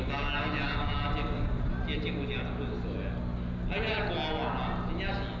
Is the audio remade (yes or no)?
no